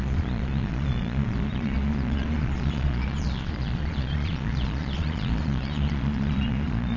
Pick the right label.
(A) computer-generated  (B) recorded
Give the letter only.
A